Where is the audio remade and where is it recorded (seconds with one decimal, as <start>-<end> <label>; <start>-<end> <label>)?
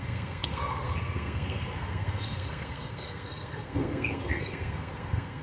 0.0-5.4 remade